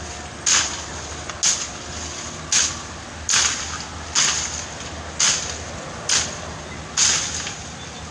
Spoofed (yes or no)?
no